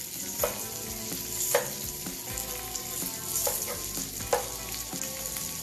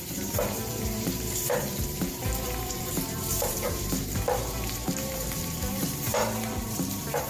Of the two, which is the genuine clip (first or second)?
first